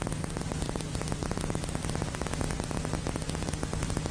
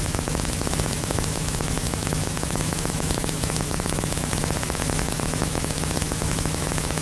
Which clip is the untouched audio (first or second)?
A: first